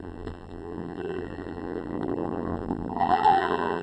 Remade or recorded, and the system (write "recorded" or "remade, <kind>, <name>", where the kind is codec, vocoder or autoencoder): remade, vocoder, BigVGAN v2